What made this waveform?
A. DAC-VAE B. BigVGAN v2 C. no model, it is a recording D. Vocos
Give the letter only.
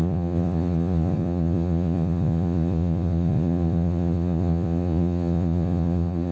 D